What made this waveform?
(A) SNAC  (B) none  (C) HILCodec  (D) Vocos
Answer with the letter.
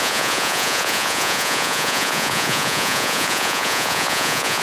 D